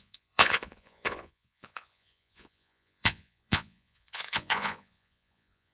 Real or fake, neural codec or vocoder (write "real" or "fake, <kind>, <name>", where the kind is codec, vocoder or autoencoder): fake, vocoder, Vocos